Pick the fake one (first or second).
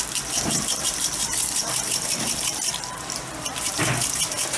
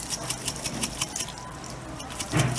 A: first